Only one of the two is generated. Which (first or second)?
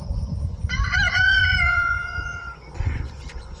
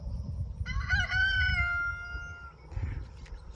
first